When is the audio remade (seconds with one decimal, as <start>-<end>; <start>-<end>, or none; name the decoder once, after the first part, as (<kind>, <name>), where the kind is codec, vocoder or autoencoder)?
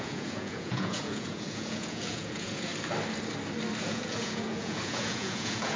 0.0-2.7 (vocoder, Vocos); 3.8-5.8